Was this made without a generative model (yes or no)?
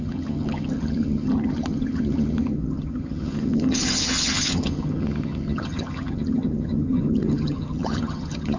no